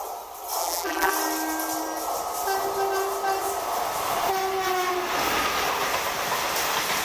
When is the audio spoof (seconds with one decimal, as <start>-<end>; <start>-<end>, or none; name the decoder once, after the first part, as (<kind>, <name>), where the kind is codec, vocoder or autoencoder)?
0.6-1.1 (vocoder, BigVGAN v2)